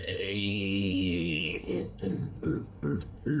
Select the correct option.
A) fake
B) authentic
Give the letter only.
A